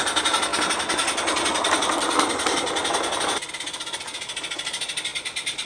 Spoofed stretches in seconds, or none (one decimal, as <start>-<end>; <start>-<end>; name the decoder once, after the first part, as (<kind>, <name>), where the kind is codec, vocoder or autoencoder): none